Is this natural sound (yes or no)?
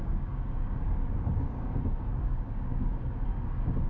no